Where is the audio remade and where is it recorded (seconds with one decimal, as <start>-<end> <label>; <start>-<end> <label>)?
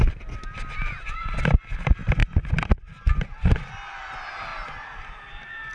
0.0-5.7 recorded